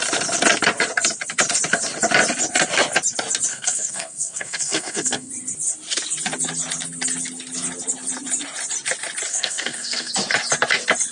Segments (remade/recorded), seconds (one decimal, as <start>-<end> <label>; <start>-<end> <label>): 0.0-3.5 recorded; 3.5-5.3 remade; 5.3-9.3 recorded; 9.3-10.1 remade; 10.1-11.1 recorded